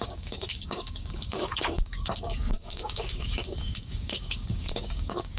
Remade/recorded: remade